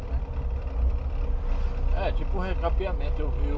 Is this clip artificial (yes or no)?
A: no